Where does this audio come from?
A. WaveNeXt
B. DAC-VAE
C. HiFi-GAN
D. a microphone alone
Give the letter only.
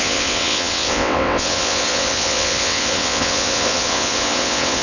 A